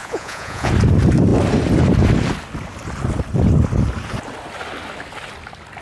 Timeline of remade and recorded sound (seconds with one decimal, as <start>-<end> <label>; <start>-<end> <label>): 0.0-0.7 remade; 0.7-5.8 recorded